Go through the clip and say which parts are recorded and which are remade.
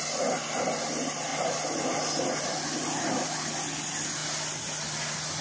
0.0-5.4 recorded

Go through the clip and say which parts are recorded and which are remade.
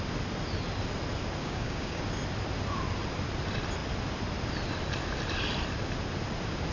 0.0-1.4 recorded; 1.4-2.0 remade; 2.0-6.7 recorded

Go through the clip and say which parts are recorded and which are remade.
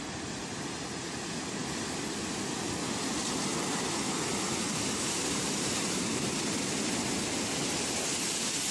0.0-1.6 recorded; 1.6-2.3 remade; 2.3-3.5 recorded; 3.5-6.9 remade; 6.9-8.7 recorded